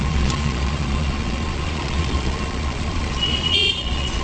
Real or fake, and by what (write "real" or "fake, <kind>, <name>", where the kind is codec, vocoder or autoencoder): fake, vocoder, Vocos